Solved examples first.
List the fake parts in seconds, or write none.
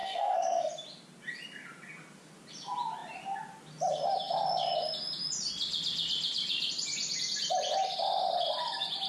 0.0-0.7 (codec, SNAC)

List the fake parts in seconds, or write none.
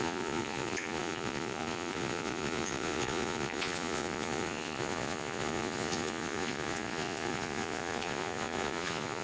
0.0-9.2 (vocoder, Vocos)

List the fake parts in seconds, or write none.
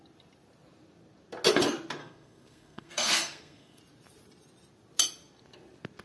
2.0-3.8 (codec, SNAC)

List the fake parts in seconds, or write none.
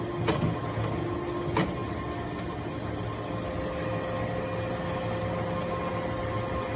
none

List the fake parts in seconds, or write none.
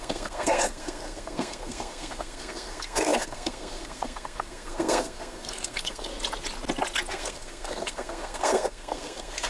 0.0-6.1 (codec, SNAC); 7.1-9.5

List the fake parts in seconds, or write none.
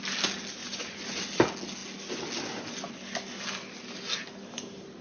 0.6-1.1 (vocoder, Vocos)